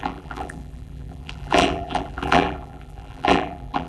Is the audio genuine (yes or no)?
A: no